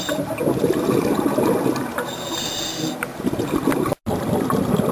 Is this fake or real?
real